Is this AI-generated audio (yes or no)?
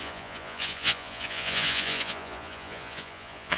yes